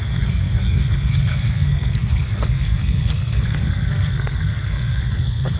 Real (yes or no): no